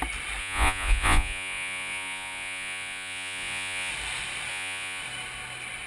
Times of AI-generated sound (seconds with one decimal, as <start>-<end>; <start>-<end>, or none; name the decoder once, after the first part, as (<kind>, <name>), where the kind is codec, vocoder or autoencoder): 0.4-3.9 (vocoder, Vocos); 4.5-5.0